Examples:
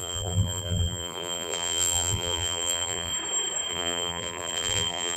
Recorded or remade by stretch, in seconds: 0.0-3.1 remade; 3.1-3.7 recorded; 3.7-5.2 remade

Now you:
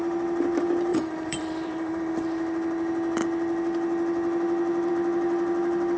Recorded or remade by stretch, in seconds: 0.0-0.9 recorded; 0.9-2.0 remade; 2.0-6.0 recorded

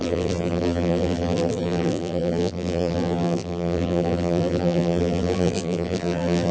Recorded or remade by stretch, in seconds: 0.0-6.5 remade